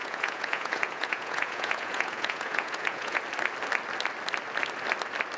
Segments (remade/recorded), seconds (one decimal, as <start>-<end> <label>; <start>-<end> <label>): 0.0-3.2 remade; 3.2-5.4 recorded